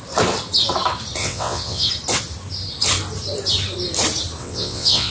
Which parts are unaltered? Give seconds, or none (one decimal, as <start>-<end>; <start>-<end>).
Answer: 0.0-1.2; 1.9-4.4